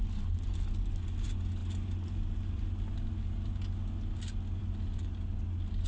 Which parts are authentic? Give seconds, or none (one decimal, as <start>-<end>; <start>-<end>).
0.0-5.9